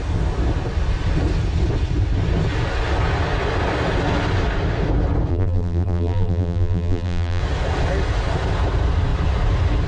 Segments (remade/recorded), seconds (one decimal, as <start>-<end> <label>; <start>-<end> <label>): 0.0-5.3 recorded; 5.3-7.4 remade; 7.4-9.9 recorded